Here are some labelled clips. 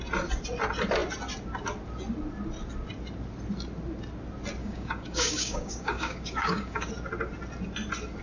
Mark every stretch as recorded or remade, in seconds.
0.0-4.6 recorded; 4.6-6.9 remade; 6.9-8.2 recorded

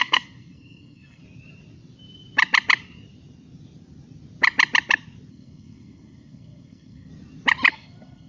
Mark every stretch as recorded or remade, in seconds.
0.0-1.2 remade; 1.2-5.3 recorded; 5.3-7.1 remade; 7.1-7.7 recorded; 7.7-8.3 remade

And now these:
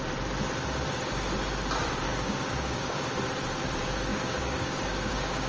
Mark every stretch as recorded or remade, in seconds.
0.0-2.1 recorded; 2.1-2.9 remade; 2.9-4.1 recorded; 4.1-5.5 remade

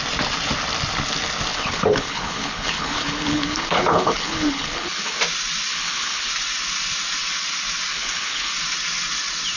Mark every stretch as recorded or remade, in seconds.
0.0-1.5 recorded; 1.5-5.2 remade; 5.2-5.7 recorded; 5.7-6.3 remade; 6.3-7.9 recorded; 7.9-8.5 remade; 8.5-9.6 recorded

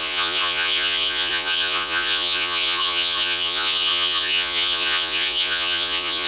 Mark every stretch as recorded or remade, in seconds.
0.0-6.3 remade

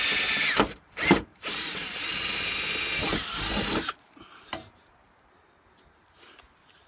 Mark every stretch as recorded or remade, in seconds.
0.0-1.3 recorded; 1.3-2.2 remade; 2.2-3.0 recorded; 3.0-5.4 remade; 5.4-6.9 recorded